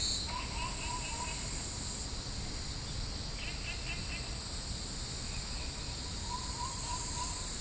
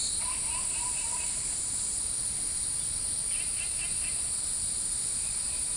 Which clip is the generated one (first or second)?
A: second